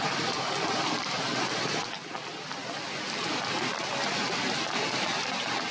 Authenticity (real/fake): real